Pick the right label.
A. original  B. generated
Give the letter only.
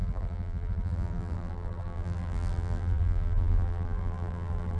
B